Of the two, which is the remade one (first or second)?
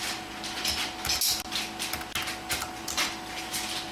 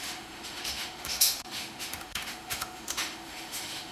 second